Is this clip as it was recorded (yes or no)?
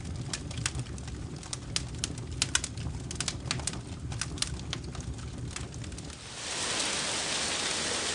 yes